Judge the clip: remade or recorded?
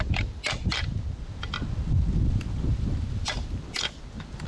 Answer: recorded